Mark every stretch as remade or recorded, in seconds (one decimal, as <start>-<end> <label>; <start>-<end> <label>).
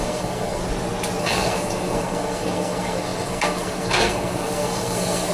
0.0-0.6 remade; 0.6-1.2 recorded; 1.2-5.3 remade